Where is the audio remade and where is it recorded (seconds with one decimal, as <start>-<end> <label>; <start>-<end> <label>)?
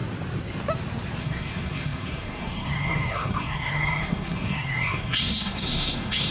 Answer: 0.0-1.2 recorded; 1.2-6.3 remade